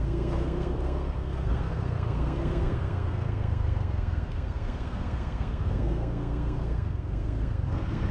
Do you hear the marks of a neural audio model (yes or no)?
yes